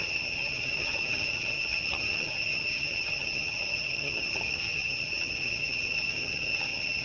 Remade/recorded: remade